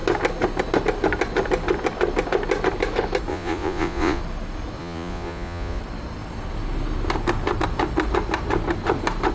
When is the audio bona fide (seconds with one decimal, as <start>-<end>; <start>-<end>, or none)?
0.0-3.3; 4.2-4.8; 5.8-9.3